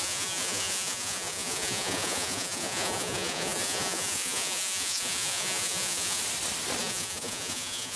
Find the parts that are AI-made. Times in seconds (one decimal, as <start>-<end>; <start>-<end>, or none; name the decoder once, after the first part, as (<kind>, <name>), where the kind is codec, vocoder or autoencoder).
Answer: 0.0-6.2 (vocoder, Vocos); 6.8-8.0